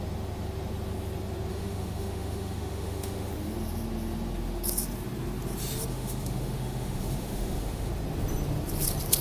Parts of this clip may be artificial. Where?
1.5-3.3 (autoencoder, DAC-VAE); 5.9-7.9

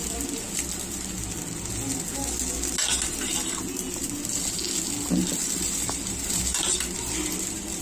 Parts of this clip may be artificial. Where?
5.4-7.8 (vocoder, BigVGAN v2)

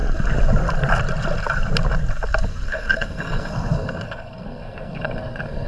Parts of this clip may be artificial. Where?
2.5-5.7 (codec, SNAC)

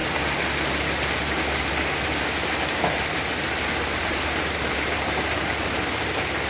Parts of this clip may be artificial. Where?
4.0-5.8 (vocoder, BigVGAN v2)

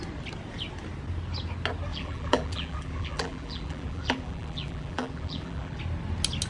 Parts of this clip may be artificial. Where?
1.9-5.8 (vocoder, BigVGAN v2)

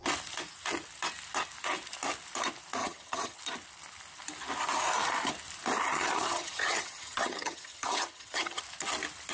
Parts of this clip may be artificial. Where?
2.8-3.4 (vocoder, HiFi-GAN); 5.9-8.6